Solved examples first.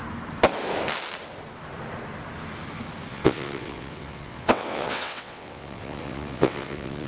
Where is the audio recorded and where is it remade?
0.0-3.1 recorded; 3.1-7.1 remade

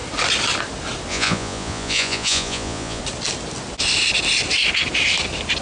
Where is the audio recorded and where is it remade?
0.0-1.1 recorded; 1.1-3.0 remade; 3.0-5.6 recorded

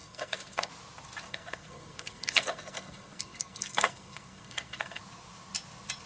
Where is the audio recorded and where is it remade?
0.0-0.7 remade; 0.7-1.3 recorded; 1.3-5.0 remade; 5.0-6.1 recorded

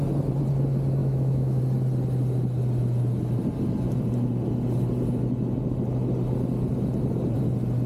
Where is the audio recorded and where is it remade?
0.0-1.0 recorded; 1.0-1.6 remade; 1.6-7.9 recorded

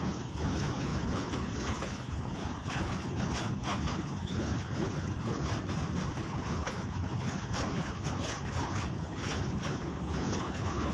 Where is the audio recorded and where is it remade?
0.0-5.5 remade; 5.5-6.1 recorded; 6.1-10.9 remade